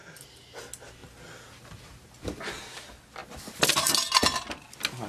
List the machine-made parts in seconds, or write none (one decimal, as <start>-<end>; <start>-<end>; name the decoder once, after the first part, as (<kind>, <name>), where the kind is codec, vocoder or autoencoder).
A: none